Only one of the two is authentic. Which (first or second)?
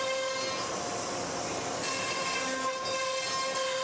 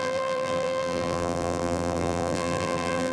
first